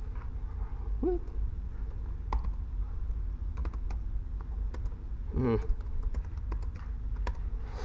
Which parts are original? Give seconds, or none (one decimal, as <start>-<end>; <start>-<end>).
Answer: 0.0-7.8